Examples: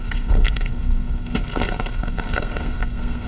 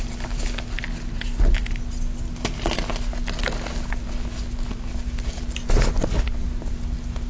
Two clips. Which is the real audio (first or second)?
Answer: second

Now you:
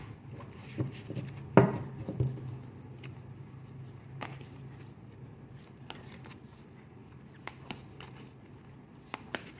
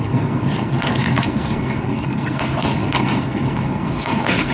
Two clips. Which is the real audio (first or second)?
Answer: first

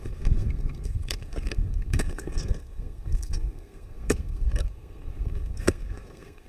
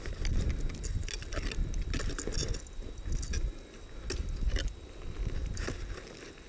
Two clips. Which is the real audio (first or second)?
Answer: second